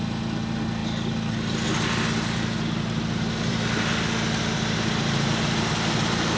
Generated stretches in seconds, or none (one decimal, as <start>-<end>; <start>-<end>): none